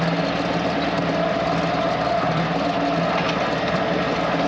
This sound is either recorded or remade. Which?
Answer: recorded